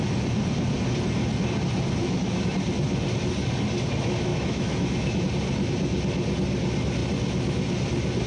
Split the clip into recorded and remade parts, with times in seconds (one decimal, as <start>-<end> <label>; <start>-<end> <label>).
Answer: 0.0-2.0 recorded; 2.0-2.5 remade; 2.5-4.3 recorded; 4.3-5.2 remade; 5.2-8.3 recorded